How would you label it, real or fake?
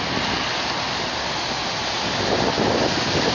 real